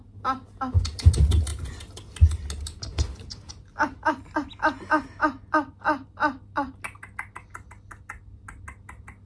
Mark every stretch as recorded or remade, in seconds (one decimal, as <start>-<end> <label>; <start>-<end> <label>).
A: 0.0-9.3 recorded